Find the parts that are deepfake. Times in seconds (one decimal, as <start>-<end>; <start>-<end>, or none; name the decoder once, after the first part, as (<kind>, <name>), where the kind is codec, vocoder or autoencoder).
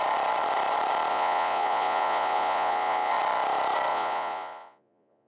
1.1-3.1 (vocoder, Vocos); 3.9-5.3